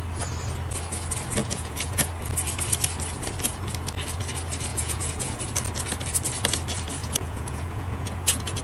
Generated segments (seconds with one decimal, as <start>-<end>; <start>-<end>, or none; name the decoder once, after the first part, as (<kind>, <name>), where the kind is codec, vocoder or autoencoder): 1.4-2.1 (vocoder, Vocos); 4.7-5.4; 7.0-8.6